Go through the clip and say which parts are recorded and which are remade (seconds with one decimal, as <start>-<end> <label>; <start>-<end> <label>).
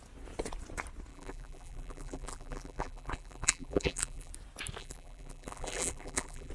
0.0-1.1 recorded; 1.1-4.3 remade; 4.3-4.8 recorded; 4.8-6.5 remade